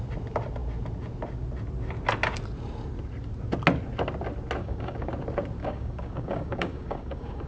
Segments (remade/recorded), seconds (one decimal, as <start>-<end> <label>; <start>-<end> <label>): 0.0-4.6 recorded; 4.6-5.1 remade; 5.1-5.6 recorded; 5.6-7.5 remade